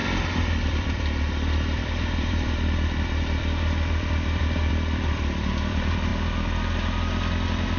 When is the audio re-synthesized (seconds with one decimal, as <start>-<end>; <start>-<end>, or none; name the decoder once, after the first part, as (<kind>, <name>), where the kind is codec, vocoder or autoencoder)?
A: 0.0-6.1 (vocoder, BigVGAN v2)